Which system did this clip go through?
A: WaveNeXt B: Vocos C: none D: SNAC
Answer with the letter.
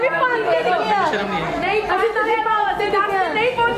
C